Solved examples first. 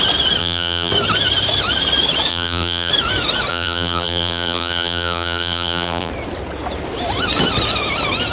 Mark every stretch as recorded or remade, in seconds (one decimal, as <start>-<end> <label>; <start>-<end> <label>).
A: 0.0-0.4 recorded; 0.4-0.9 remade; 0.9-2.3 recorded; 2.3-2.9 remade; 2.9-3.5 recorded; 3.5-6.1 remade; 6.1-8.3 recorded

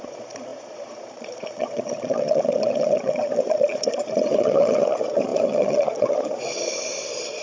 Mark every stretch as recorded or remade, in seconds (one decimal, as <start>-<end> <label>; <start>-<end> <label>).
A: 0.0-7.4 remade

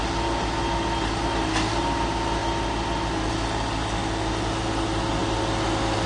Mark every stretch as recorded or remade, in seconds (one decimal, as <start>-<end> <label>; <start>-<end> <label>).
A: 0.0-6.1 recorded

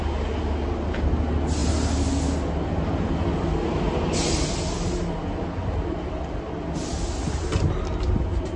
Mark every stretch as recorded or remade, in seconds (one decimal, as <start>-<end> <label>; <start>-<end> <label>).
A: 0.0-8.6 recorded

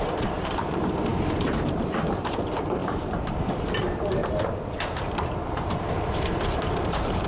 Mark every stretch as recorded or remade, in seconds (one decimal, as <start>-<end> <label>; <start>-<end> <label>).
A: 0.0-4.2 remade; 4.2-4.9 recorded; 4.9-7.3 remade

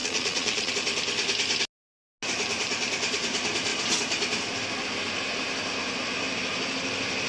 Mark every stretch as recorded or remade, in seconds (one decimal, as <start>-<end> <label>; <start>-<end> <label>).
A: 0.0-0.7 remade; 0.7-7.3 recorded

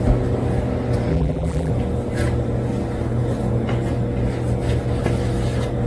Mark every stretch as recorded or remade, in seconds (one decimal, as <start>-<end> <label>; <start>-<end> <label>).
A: 0.0-1.1 recorded; 1.1-1.7 remade; 1.7-5.9 recorded